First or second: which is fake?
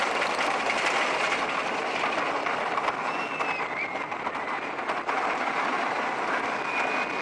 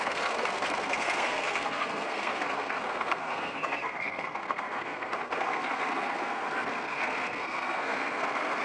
second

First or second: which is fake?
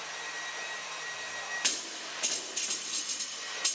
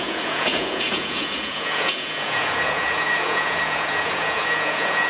second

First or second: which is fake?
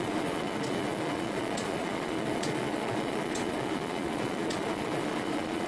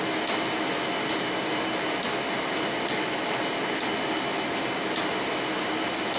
first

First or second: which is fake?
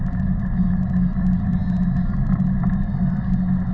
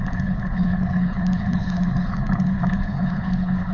second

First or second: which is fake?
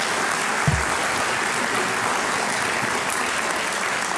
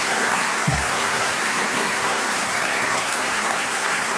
second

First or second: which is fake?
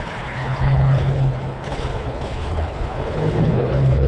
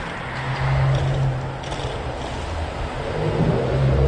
first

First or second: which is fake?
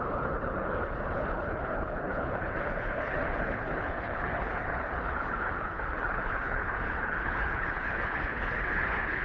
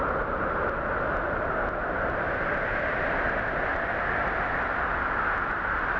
first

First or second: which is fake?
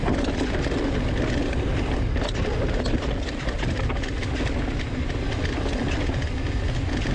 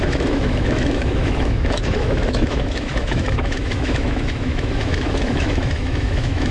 second